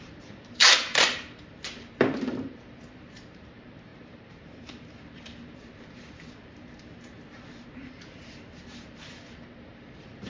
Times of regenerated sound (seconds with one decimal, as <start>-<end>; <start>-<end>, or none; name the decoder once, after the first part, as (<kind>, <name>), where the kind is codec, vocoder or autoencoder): 0.0-10.3 (vocoder, BigVGAN v2)